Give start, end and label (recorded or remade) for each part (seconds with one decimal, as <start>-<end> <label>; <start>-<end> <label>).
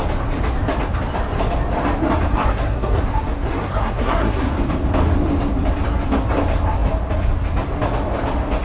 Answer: 0.0-2.3 recorded; 2.3-3.0 remade; 3.0-3.5 recorded; 3.5-4.5 remade; 4.5-8.6 recorded